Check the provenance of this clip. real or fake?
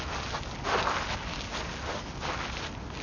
real